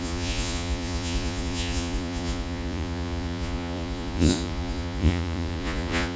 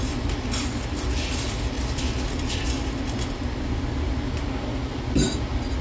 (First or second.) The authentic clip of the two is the second